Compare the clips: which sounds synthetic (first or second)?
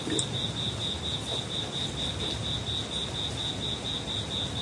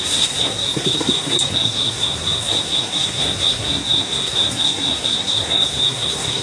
second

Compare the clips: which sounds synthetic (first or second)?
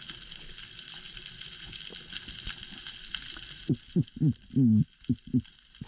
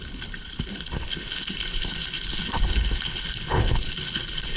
second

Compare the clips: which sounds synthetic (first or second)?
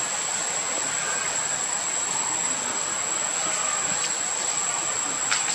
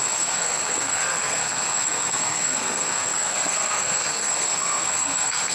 second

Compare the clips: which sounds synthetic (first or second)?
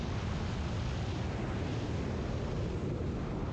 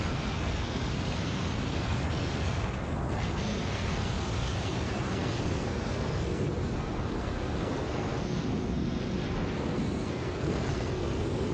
second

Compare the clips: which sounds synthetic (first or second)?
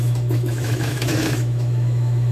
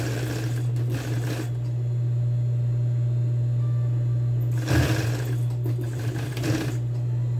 first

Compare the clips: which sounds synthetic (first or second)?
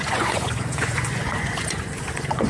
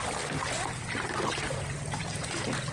first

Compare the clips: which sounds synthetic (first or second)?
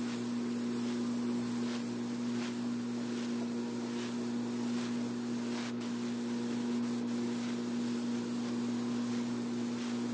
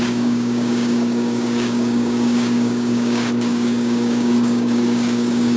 second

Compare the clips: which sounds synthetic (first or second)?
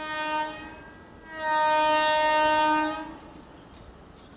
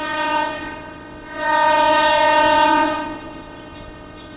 second